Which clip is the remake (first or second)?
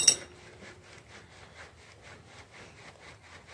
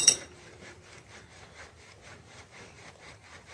second